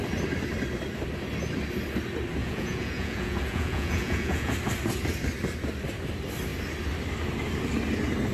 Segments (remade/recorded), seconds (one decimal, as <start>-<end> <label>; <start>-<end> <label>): 0.0-2.4 recorded; 2.4-4.5 remade; 4.5-8.3 recorded